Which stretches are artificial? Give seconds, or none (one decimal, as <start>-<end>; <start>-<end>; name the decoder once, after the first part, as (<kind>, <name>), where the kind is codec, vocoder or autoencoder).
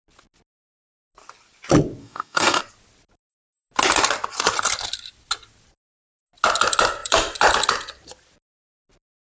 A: 2.0-2.6 (codec, DAC)